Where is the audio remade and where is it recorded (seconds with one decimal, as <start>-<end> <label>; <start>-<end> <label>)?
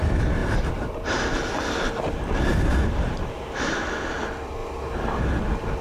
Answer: 0.0-0.4 recorded; 0.4-1.2 remade; 1.2-2.7 recorded; 2.7-3.8 remade; 3.8-5.8 recorded